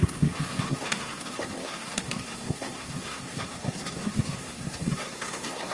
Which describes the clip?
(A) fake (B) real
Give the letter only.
A